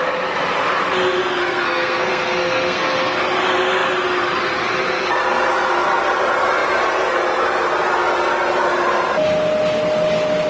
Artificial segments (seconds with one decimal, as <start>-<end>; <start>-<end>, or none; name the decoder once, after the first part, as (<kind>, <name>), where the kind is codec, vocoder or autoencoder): 1.4-3.2 (codec, SNAC)